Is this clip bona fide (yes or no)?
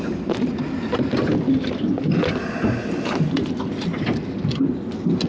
yes